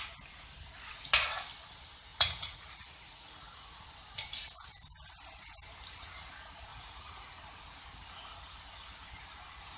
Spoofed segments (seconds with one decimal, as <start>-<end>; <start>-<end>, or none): 2.1-3.8; 6.7-7.4